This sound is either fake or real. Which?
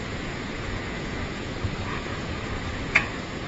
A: fake